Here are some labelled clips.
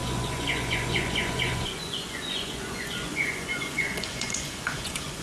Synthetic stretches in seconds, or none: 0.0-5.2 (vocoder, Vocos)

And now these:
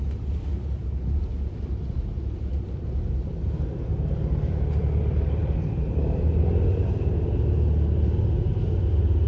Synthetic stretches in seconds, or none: 2.5-3.5 (vocoder, BigVGAN v2); 3.9-4.8; 5.4-7.1